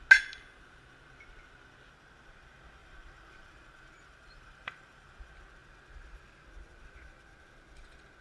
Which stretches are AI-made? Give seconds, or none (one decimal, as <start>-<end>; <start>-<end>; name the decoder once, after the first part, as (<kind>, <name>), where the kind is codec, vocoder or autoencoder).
2.8-5.1 (vocoder, BigVGAN v2)